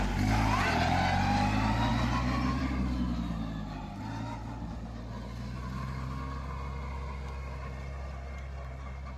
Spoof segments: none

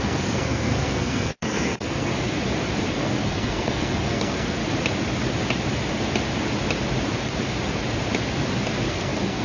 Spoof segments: 0.0-2.1 (codec, SNAC); 2.9-4.6; 8.9-9.4

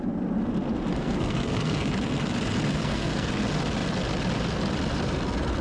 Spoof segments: 0.9-1.9 (codec, SNAC); 2.7-3.3